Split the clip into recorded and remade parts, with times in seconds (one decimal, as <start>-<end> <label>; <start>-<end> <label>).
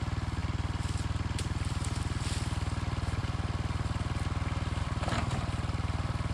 0.0-6.3 recorded